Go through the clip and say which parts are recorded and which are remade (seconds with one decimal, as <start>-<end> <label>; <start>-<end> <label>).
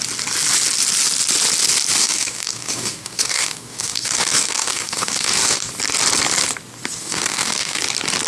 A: 0.0-2.0 recorded; 2.0-5.7 remade; 5.7-7.0 recorded; 7.0-7.8 remade; 7.8-8.3 recorded